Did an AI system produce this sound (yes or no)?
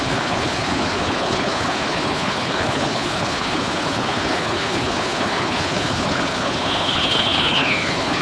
yes